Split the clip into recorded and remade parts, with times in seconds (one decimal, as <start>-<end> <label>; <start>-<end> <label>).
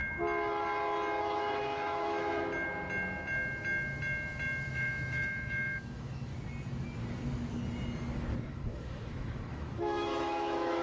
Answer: 0.0-1.2 recorded; 1.2-2.3 remade; 2.3-4.7 recorded; 4.7-6.3 remade; 6.3-8.5 recorded; 8.5-10.8 remade